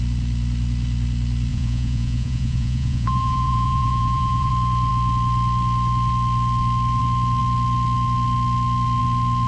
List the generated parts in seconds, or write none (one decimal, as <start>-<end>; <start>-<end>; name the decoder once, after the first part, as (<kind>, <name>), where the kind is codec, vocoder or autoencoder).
1.5-4.5 (vocoder, Vocos)